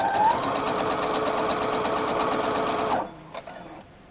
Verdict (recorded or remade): recorded